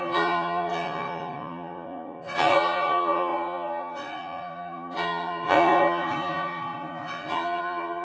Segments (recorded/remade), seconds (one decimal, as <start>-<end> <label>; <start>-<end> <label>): 0.0-8.0 remade